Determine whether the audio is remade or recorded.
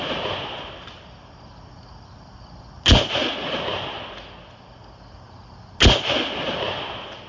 recorded